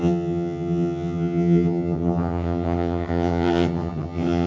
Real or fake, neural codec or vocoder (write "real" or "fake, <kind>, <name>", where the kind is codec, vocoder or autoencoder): fake, vocoder, HiFi-GAN